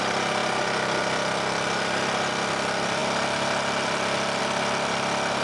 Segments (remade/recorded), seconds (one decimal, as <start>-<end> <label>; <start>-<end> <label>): 0.0-0.4 remade; 0.4-2.3 recorded; 2.3-3.0 remade; 3.0-4.4 recorded; 4.4-5.4 remade